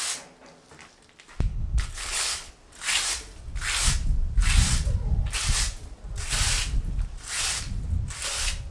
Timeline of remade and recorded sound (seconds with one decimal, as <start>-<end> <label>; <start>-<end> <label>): 0.0-1.5 recorded; 1.5-2.5 remade; 2.5-8.7 recorded